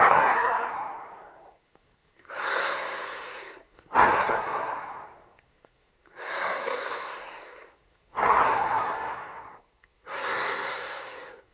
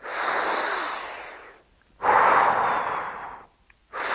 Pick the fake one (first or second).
first